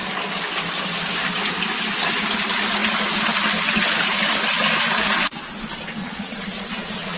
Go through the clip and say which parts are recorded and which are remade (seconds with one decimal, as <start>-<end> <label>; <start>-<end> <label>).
0.0-6.0 recorded; 6.0-7.2 remade